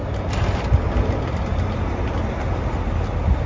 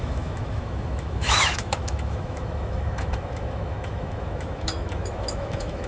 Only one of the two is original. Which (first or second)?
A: first